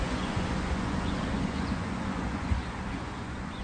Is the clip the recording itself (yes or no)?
no